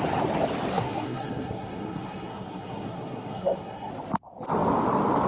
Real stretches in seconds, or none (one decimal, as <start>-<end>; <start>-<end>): 0.0-0.7; 3.9-5.3